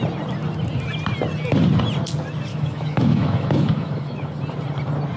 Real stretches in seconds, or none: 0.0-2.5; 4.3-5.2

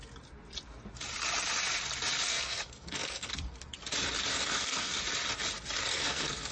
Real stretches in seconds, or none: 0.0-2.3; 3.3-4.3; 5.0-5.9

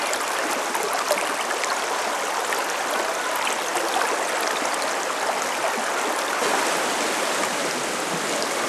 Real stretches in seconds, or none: 0.0-8.7

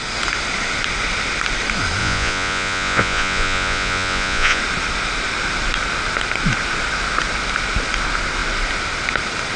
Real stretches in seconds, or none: 0.0-2.0; 4.6-9.6

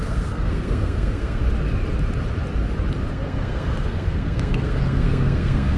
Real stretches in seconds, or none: 1.4-3.1